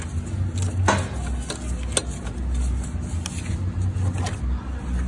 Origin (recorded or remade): recorded